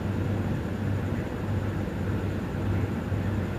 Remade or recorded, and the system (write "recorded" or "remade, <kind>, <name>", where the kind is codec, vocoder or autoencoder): recorded